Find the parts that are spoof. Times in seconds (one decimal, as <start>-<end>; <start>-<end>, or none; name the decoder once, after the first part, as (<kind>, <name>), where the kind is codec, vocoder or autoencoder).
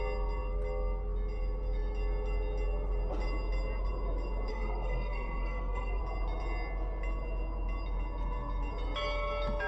4.5-6.0 (codec, SNAC)